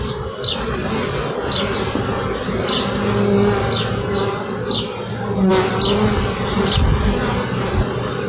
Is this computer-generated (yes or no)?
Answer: no